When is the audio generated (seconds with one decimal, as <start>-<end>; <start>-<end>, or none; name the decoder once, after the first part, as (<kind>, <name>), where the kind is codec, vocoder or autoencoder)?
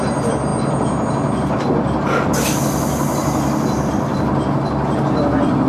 none